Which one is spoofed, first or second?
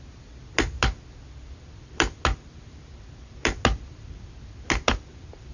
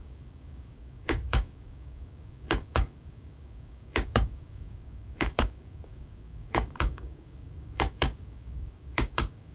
second